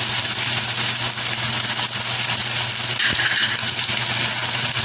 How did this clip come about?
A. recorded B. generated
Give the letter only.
A